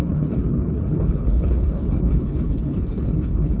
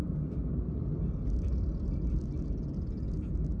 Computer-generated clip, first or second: first